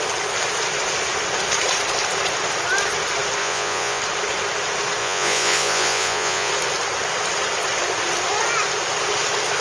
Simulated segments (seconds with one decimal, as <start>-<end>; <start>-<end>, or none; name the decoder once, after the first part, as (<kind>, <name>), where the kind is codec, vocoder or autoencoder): 3.4-4.0 (vocoder, Vocos); 5.0-6.5